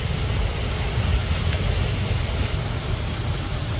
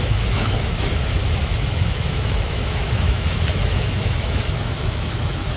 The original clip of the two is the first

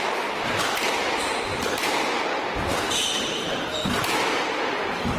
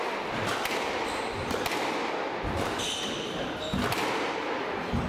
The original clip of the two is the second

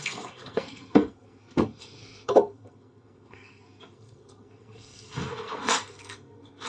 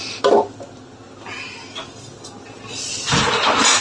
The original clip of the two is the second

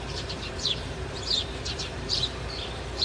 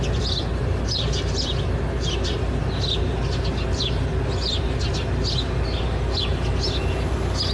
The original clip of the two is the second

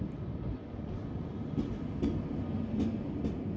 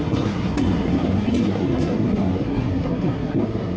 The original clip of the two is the first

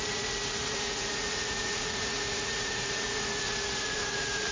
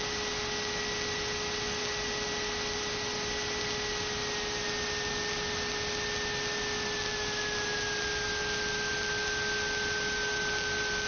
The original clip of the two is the second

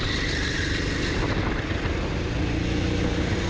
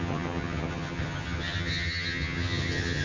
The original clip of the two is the first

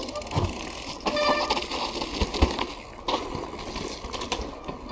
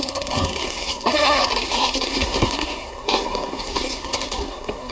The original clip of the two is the first